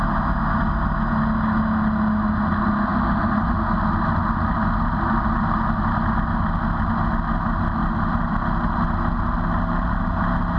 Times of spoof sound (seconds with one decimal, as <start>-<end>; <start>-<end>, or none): none